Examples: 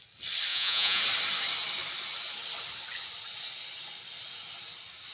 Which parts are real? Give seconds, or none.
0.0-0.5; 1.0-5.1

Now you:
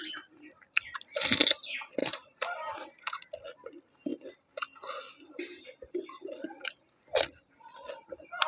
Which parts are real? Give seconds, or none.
0.0-2.0; 3.2-8.5

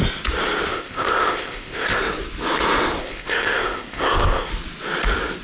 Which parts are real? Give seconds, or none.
0.0-0.7; 2.0-3.0; 4.5-5.4

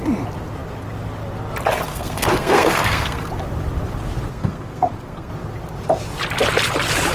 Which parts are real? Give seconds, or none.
0.0-1.9; 3.3-4.3; 5.3-7.1